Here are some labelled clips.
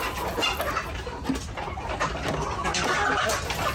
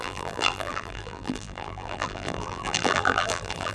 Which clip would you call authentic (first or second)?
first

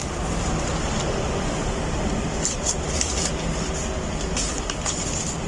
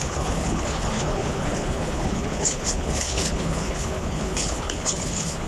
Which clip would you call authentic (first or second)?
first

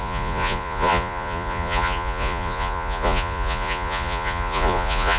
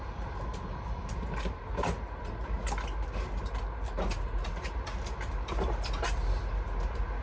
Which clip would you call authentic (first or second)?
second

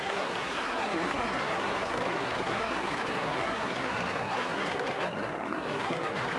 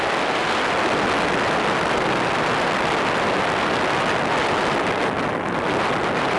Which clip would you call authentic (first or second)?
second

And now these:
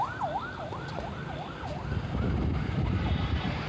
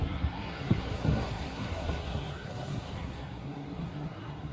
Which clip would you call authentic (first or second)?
first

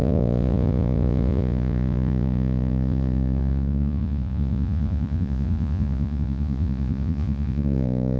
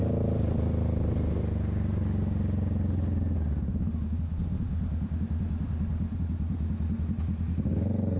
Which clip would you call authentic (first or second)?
second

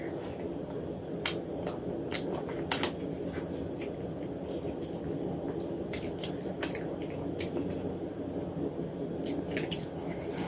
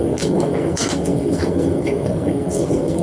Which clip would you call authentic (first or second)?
first